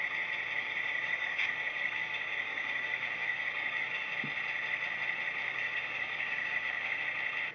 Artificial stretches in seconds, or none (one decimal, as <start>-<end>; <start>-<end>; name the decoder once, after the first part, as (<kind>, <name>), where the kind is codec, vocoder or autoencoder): 0.6-4.1 (codec, DAC); 5.4-7.0